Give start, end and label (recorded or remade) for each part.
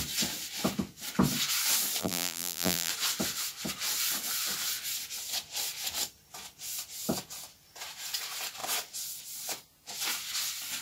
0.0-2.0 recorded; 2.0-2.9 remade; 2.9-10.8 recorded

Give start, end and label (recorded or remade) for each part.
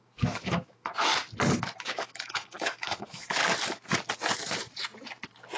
0.0-1.1 remade; 1.1-1.8 recorded; 1.8-3.4 remade; 3.4-5.6 recorded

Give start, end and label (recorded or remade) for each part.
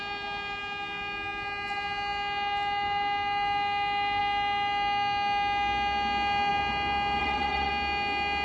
0.0-7.2 recorded; 7.2-7.7 remade; 7.7-8.4 recorded